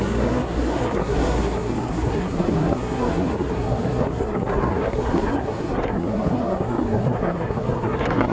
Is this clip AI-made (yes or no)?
yes